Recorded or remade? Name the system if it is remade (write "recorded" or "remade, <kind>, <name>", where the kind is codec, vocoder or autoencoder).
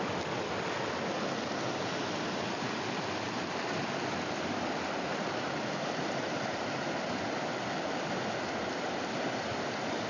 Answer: recorded